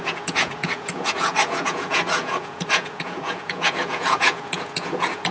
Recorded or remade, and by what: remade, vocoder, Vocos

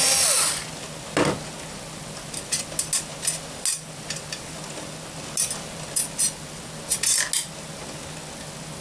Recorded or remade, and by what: recorded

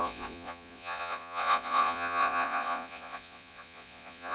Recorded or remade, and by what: remade, vocoder, Vocos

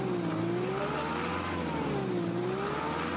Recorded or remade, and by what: recorded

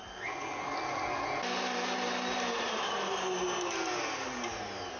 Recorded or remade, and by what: recorded